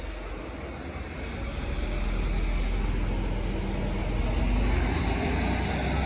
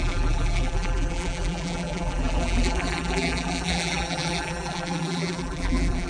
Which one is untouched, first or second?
first